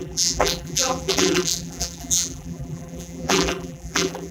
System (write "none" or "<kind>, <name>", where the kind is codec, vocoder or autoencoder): vocoder, BigVGAN v2